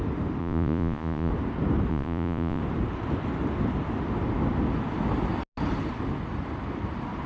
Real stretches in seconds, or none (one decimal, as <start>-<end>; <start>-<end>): 0.0-0.4; 1.3-1.9; 2.6-7.3